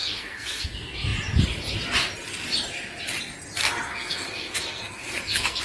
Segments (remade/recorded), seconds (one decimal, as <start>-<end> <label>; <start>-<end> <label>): 0.0-0.7 remade; 0.7-3.6 recorded; 3.6-5.6 remade